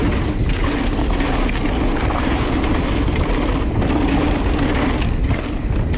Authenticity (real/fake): real